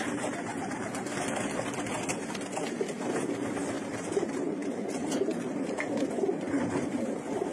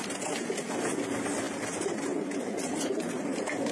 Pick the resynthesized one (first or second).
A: first